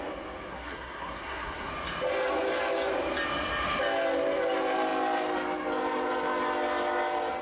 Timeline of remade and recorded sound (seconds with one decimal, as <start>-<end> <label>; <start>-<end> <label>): 0.0-0.5 recorded; 0.5-1.7 remade; 1.7-7.4 recorded